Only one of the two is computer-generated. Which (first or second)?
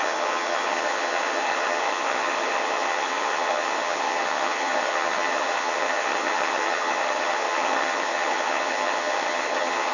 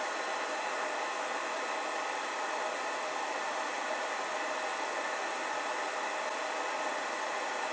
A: first